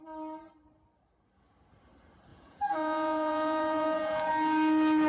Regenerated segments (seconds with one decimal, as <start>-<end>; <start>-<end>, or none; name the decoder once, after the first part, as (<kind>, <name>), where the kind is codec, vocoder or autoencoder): 2.3-4.3 (vocoder, Vocos)